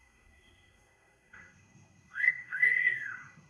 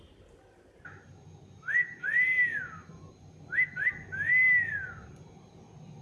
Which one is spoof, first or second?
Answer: first